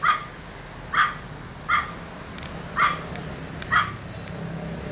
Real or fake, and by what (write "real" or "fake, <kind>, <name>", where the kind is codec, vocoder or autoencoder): real